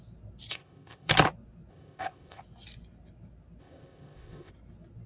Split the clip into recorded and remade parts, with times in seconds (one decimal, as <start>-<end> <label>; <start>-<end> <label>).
0.0-0.5 recorded; 0.5-1.1 remade; 1.1-1.7 recorded; 1.7-2.4 remade; 2.4-3.6 recorded; 3.6-4.5 remade; 4.5-5.1 recorded